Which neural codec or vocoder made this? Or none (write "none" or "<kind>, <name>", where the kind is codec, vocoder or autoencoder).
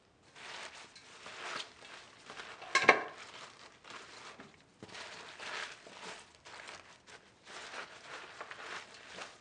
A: none